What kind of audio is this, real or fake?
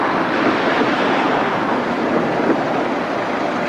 real